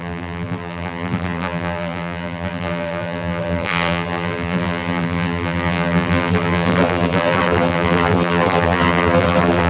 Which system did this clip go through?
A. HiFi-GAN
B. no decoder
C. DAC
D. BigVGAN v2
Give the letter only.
D